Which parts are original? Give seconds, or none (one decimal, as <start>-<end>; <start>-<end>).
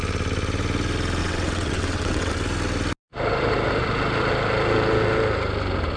0.0-1.2; 2.3-6.0